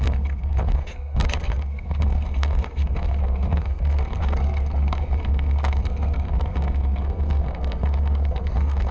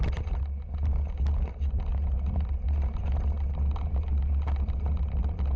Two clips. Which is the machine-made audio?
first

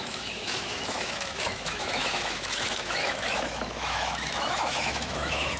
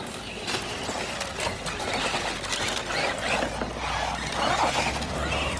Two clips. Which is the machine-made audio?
first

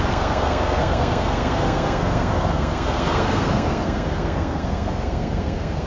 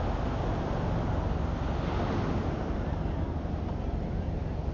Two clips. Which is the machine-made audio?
first